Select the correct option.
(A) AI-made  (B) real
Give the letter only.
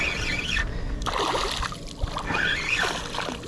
B